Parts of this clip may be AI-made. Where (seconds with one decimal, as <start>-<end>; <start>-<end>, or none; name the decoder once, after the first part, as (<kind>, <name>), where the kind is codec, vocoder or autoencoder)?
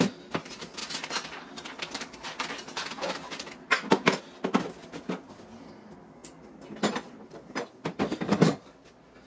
8.1-8.6 (codec, DAC)